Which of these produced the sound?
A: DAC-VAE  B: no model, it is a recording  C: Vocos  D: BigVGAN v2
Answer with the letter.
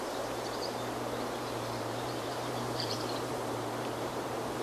D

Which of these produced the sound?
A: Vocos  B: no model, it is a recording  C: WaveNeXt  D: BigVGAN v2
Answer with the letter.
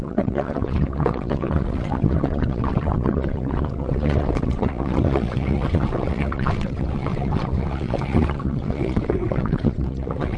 C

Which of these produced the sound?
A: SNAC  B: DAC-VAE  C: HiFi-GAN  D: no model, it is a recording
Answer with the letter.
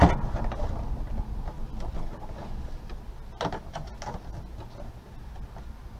D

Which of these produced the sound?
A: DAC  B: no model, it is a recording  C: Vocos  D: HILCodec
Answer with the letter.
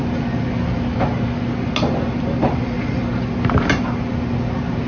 B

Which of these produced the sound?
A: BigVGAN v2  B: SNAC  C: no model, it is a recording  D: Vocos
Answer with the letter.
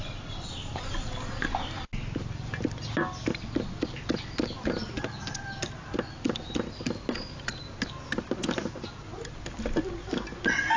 C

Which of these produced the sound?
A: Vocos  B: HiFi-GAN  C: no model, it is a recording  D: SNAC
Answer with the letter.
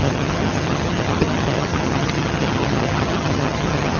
B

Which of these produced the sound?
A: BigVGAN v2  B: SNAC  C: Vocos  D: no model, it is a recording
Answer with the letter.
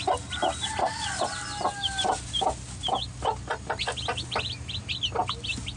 D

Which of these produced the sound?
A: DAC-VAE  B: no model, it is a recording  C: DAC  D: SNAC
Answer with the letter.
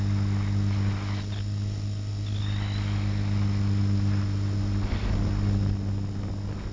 B